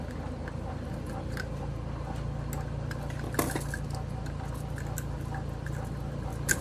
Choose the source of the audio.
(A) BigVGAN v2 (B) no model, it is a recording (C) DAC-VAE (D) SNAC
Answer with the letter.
B